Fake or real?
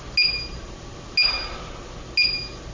real